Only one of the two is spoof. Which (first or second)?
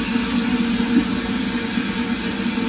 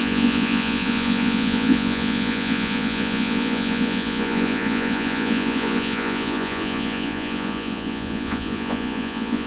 second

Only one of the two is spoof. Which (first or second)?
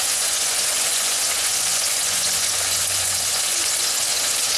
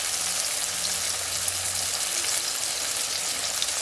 first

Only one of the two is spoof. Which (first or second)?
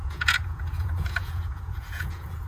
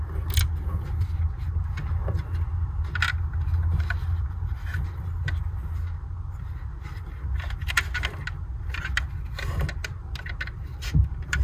first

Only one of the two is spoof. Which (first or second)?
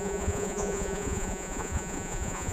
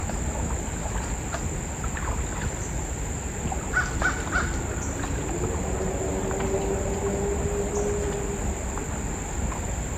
first